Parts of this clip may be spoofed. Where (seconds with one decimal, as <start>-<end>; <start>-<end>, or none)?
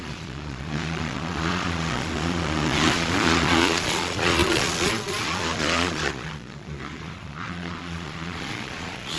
0.0-9.2